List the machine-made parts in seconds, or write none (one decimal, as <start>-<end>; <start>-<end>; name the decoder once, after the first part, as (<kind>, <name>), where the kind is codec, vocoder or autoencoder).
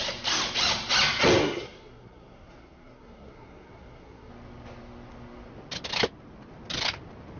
1.4-4.3 (codec, SNAC)